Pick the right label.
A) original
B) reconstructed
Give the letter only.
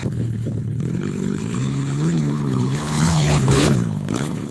B